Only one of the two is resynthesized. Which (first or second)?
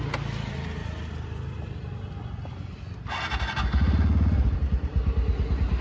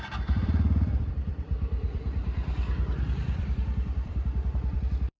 second